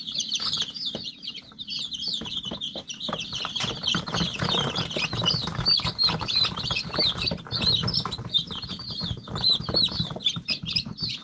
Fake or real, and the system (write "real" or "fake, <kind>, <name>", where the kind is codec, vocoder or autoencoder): fake, vocoder, BigVGAN v2